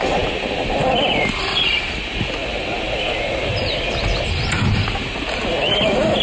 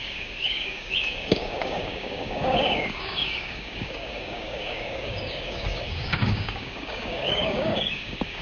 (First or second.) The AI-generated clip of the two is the second